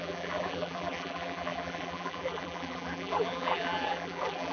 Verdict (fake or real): fake